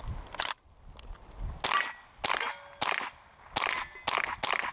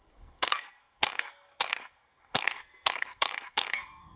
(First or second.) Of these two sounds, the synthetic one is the second